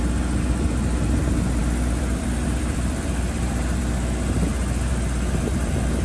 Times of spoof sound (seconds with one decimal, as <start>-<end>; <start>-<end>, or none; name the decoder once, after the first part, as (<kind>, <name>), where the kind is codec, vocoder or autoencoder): 1.6-3.8 (vocoder, BigVGAN v2)